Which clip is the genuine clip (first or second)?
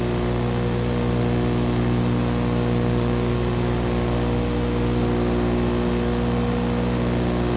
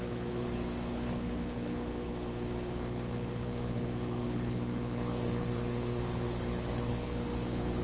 first